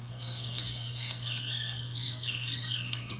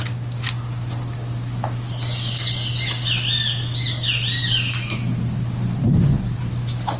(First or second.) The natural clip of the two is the second